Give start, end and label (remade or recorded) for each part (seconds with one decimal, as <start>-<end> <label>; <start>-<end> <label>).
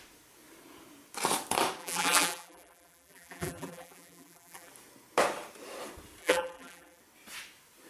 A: 0.0-1.8 recorded; 1.8-4.7 remade; 4.7-6.2 recorded; 6.2-7.0 remade; 7.0-7.9 recorded